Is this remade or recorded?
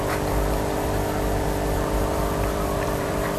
remade